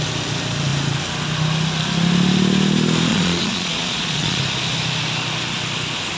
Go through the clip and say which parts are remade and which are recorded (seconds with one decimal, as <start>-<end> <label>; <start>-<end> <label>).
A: 0.0-3.1 recorded; 3.1-4.4 remade; 4.4-6.2 recorded